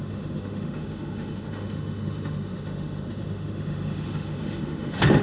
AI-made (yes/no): yes